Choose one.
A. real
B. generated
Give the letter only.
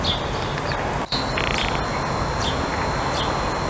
A